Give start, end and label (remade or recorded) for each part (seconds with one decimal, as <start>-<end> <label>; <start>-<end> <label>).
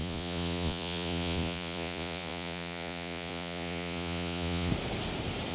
0.0-4.7 remade; 4.7-5.5 recorded